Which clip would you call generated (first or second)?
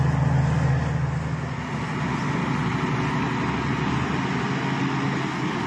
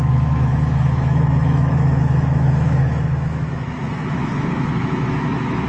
second